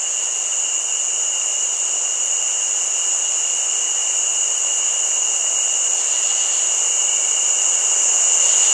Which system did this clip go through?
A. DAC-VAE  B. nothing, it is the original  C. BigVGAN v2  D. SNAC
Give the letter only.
B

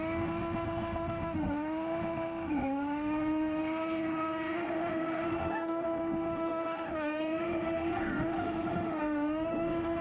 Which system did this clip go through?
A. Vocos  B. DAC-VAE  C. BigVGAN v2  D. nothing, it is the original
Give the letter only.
B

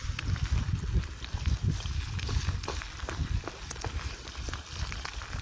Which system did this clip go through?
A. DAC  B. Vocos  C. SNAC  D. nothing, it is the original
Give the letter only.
D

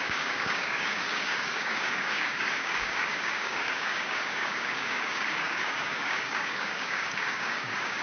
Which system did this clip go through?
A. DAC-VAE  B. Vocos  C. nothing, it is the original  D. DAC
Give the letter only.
D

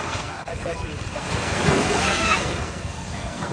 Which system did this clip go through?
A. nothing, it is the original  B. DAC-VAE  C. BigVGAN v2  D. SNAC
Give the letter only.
D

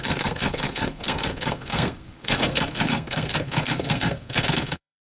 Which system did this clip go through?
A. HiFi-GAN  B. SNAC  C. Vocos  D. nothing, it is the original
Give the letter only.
B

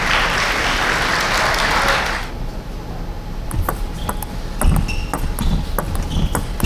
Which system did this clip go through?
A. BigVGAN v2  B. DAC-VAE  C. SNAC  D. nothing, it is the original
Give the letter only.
D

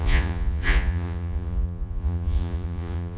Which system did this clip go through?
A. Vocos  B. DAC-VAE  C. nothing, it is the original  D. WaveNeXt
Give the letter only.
A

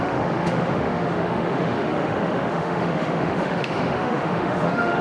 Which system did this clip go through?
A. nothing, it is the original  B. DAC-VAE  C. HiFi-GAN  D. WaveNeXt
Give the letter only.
B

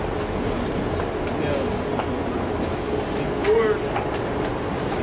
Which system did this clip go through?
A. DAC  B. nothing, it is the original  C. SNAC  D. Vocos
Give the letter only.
B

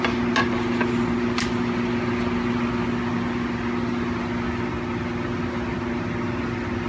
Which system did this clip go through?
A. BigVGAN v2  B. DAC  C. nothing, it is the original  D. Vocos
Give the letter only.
C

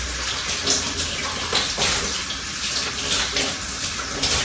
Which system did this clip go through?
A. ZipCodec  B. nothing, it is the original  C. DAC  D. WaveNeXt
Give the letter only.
B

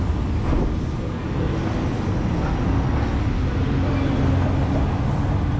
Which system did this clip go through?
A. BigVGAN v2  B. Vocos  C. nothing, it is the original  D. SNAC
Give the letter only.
C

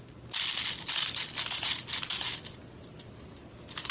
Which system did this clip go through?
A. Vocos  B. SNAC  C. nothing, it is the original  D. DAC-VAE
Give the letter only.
C